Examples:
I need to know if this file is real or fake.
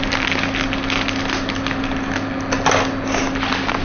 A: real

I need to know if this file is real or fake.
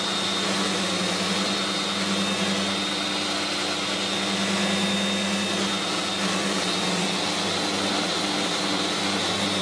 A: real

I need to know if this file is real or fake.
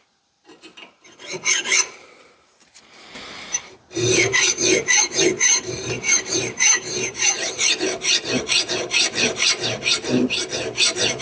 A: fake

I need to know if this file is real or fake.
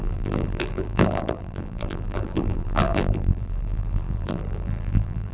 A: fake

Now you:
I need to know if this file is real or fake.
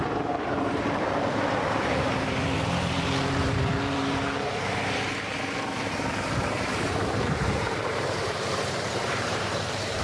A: fake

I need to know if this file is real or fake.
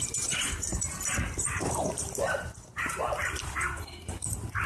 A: fake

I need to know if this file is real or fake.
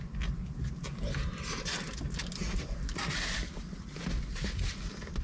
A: real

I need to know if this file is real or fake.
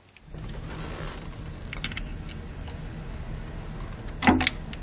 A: real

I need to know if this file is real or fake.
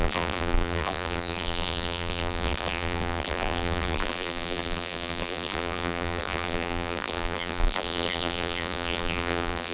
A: fake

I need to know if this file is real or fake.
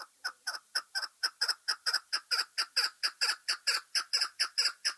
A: real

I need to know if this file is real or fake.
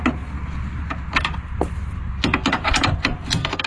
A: real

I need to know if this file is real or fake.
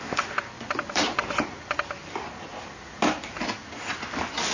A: real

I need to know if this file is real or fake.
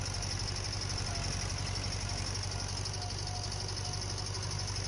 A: real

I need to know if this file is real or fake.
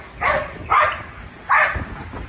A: real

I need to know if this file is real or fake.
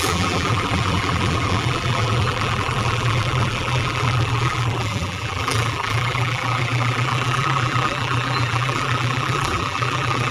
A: fake